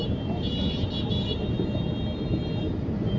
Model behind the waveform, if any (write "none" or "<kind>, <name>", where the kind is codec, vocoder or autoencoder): none